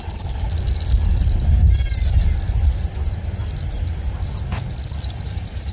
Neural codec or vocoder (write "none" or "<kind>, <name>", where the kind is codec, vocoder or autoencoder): none